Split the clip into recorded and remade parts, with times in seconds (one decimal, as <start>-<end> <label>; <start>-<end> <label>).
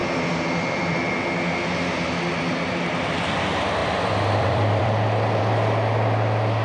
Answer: 0.0-1.1 remade; 1.1-3.8 recorded; 3.8-5.4 remade; 5.4-6.6 recorded